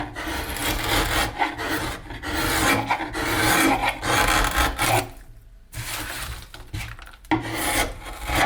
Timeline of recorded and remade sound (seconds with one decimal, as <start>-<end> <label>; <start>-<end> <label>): 0.0-8.5 recorded